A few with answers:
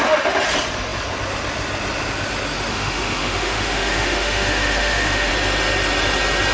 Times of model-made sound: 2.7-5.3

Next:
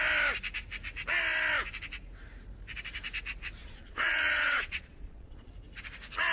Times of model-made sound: 3.6-5.5

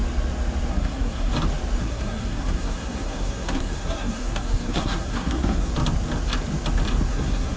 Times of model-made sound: 0.7-1.3; 1.8-5.7; 7.1-7.6

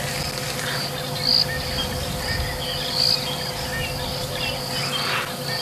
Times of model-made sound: 1.3-4.7

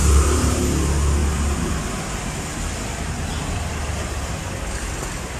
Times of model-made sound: 0.0-0.6

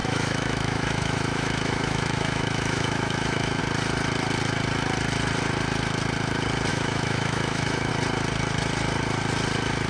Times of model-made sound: 0.0-3.6; 6.7-7.9

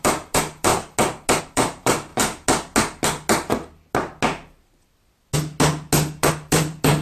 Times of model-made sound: 0.0-0.7; 1.4-2.1; 6.3-7.0

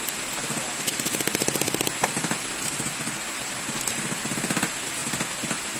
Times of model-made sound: none